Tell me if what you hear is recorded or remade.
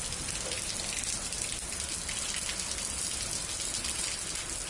recorded